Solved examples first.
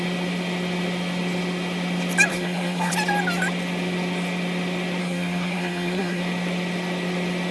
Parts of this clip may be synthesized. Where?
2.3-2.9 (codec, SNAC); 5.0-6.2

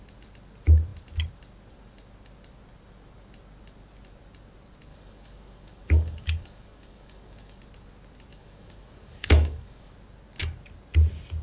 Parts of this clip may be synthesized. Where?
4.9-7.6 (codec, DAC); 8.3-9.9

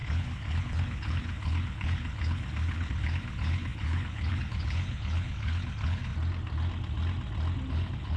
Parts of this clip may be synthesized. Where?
0.0-6.1 (codec, HILCodec); 7.7-8.2